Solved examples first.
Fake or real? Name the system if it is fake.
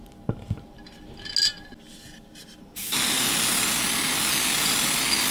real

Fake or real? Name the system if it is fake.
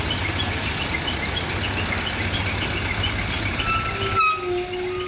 real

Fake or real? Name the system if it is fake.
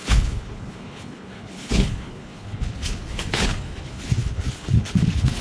fake, codec, HILCodec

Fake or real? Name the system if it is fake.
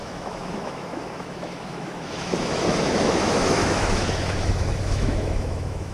fake, autoencoder, DAC-VAE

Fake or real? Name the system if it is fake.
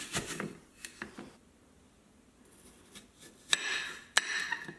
real